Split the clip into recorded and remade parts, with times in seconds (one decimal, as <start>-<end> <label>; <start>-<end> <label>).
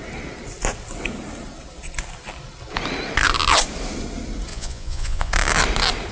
0.0-4.5 recorded; 4.5-5.3 remade; 5.3-6.1 recorded